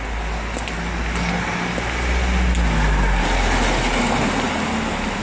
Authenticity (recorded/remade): recorded